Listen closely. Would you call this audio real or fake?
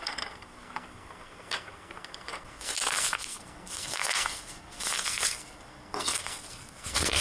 fake